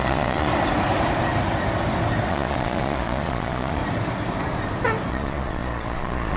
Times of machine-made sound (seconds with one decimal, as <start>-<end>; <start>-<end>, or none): 0.0-0.5; 2.3-3.8; 5.1-6.4